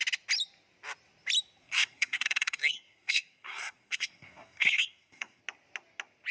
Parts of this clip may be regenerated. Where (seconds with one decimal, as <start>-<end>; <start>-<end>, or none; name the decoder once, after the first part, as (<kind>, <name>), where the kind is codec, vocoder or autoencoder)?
1.6-5.4 (codec, SNAC)